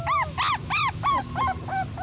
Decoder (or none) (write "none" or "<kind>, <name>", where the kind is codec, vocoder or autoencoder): none